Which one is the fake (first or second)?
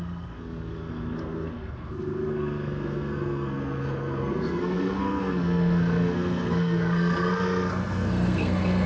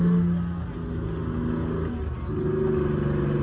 first